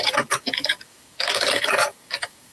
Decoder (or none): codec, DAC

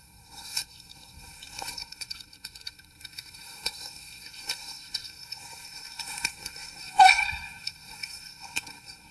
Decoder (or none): codec, SNAC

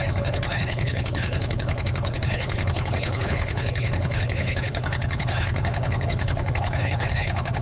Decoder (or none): codec, HILCodec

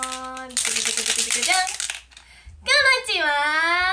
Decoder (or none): none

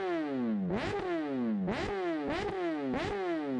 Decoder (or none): none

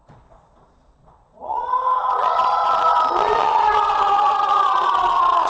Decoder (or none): vocoder, Vocos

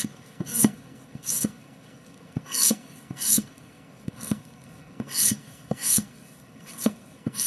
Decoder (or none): codec, SNAC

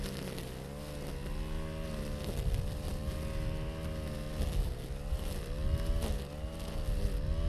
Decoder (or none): none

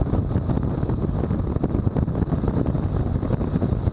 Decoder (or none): none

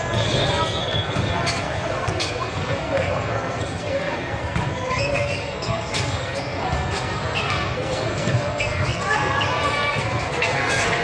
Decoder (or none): codec, SNAC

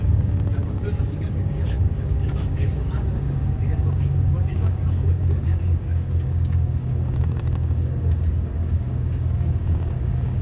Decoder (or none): codec, DAC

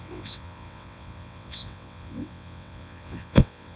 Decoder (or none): vocoder, WaveNeXt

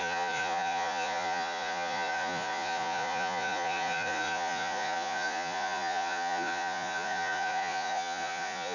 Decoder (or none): vocoder, Vocos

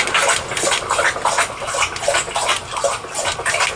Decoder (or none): none